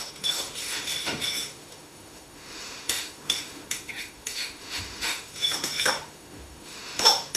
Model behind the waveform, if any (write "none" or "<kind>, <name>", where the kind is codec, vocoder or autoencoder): autoencoder, DAC-VAE